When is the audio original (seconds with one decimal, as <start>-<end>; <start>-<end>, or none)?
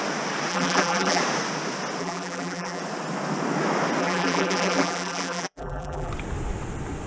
0.0-0.5; 1.2-2.0; 2.8-4.0; 6.1-7.1